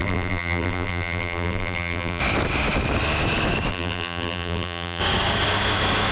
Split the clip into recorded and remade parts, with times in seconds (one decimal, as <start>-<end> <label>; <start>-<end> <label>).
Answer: 0.0-2.2 remade; 2.2-3.7 recorded; 3.7-5.0 remade; 5.0-6.1 recorded